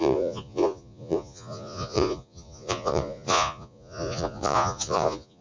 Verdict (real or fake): fake